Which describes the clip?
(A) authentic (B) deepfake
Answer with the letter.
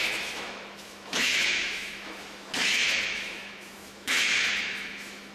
B